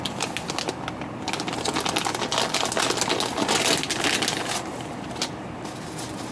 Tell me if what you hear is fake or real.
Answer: real